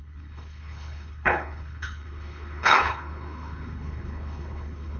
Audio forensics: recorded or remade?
remade